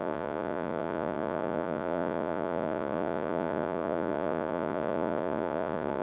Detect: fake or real fake